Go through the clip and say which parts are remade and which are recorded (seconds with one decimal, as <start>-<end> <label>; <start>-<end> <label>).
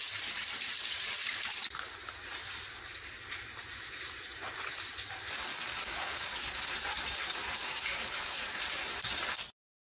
0.0-5.5 recorded; 5.5-6.7 remade; 6.7-7.6 recorded; 7.6-8.6 remade; 8.6-10.0 recorded